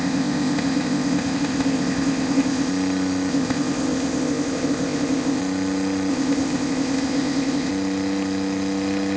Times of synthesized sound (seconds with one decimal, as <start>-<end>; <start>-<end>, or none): 0.0-2.7; 3.3-5.4; 6.1-7.7